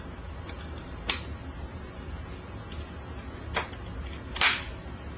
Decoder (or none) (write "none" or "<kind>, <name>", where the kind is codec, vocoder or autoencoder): none